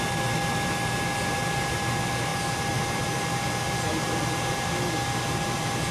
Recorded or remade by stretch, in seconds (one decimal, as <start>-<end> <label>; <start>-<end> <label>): 0.0-5.9 recorded